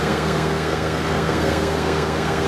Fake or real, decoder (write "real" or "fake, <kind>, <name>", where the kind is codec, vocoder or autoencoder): fake, codec, SNAC